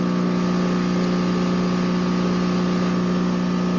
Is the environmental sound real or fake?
real